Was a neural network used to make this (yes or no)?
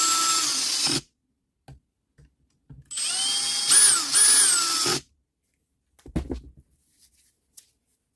no